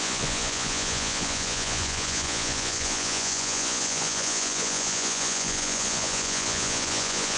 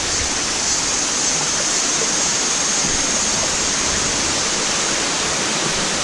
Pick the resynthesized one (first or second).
first